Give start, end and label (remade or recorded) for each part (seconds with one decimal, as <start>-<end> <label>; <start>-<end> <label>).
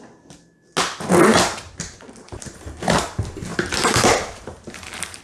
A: 0.0-1.3 recorded; 1.3-2.8 remade; 2.8-3.5 recorded; 3.5-5.2 remade